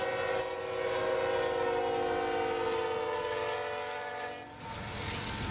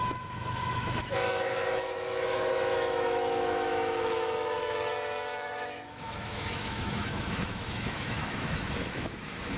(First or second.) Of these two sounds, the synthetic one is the second